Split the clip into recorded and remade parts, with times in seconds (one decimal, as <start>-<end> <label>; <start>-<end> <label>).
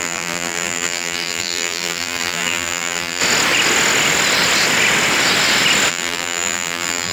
0.0-3.2 remade; 3.2-5.9 recorded; 5.9-7.1 remade